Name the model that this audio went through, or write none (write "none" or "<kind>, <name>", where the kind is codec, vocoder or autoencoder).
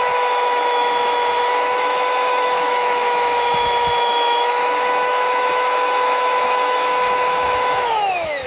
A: autoencoder, DAC-VAE